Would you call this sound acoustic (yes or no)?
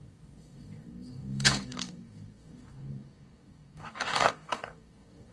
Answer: no